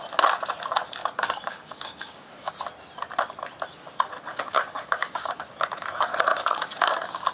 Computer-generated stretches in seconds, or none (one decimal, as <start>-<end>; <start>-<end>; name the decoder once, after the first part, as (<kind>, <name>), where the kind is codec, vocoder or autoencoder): 1.0-2.5 (codec, DAC); 4.3-5.4; 6.3-7.3

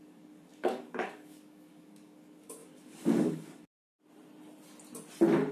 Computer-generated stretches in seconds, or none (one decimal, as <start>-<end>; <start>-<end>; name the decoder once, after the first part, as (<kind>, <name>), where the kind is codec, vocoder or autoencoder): 0.0-3.8 (codec, DAC)

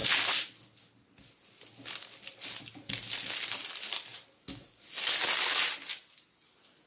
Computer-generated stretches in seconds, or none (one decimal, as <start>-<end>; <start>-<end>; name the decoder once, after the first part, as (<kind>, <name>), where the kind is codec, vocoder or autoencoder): none

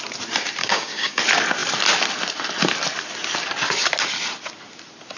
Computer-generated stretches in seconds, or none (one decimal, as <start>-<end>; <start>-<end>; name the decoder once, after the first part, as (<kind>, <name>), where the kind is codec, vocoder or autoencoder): 0.6-1.2 (codec, DAC)

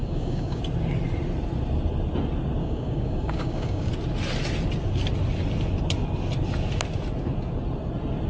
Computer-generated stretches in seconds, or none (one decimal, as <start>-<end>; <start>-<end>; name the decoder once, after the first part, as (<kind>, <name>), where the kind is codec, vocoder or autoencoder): 0.0-0.6 (codec, DAC); 2.6-3.9